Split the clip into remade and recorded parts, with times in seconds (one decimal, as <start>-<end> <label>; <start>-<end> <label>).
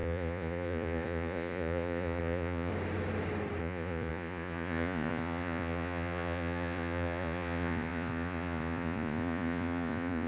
0.0-2.7 remade; 2.7-3.6 recorded; 3.6-10.3 remade